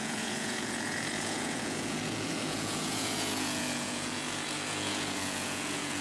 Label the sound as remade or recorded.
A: remade